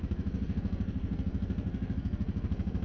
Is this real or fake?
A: fake